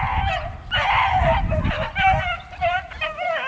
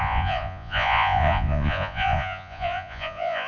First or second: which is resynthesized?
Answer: second